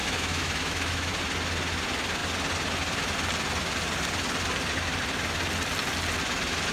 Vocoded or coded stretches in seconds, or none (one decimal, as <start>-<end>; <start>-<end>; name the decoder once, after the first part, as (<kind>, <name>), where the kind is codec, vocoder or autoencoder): 0.0-1.1 (autoencoder, DAC-VAE)